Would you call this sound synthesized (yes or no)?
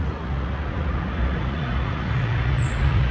yes